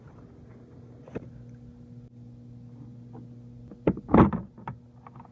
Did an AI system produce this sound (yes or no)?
no